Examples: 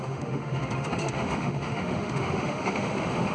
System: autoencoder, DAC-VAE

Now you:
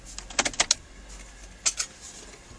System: none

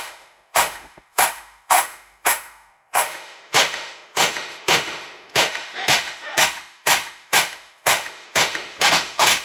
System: autoencoder, DAC-VAE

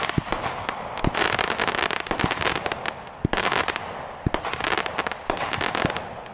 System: none